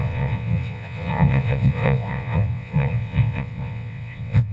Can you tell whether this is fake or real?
fake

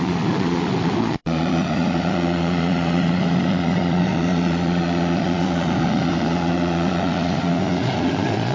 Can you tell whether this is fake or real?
fake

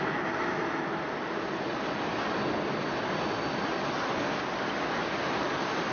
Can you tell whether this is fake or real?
real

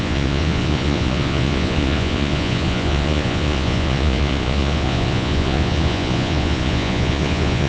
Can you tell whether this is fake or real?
fake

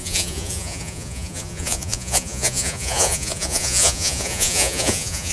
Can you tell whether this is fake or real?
fake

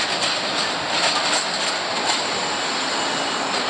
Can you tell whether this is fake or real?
real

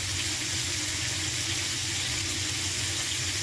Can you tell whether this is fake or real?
fake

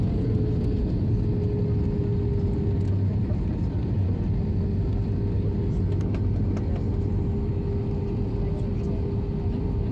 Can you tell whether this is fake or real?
real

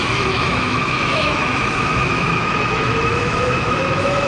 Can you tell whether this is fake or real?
fake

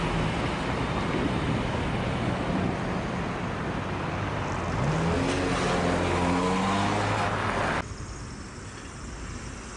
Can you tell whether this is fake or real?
real